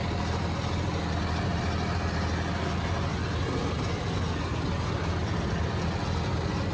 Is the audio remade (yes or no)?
no